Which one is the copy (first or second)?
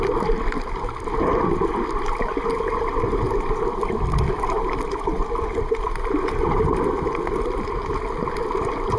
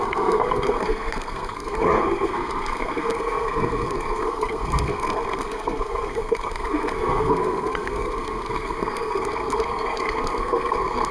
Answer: second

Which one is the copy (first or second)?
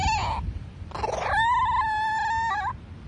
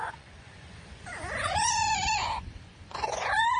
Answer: second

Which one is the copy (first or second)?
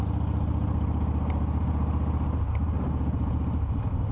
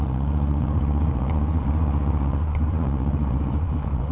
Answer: second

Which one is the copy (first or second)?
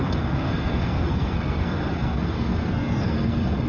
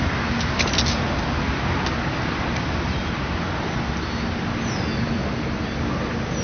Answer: first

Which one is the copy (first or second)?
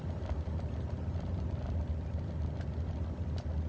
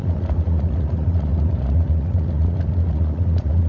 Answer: second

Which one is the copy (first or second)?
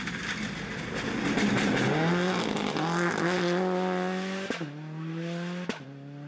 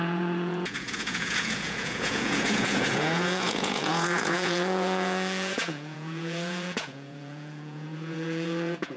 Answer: second